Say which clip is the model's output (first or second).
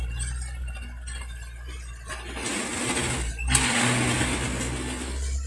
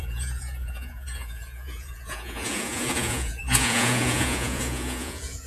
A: second